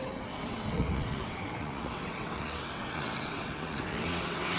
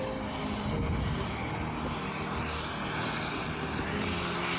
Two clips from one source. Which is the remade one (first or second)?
first